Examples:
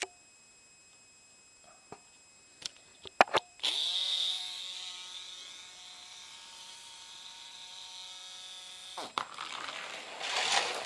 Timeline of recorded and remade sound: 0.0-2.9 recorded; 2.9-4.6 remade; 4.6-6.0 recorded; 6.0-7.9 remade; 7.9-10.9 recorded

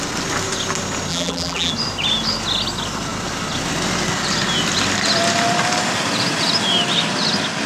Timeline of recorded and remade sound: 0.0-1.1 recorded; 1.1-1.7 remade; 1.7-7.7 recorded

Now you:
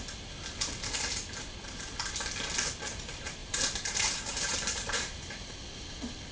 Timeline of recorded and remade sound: 0.0-3.4 recorded; 3.4-5.5 remade; 5.5-6.3 recorded

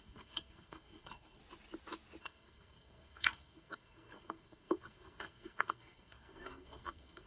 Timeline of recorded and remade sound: 0.0-1.4 remade; 1.4-2.2 recorded; 2.2-7.3 remade